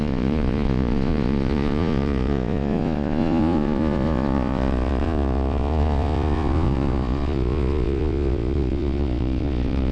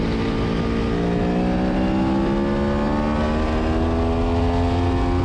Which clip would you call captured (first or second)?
second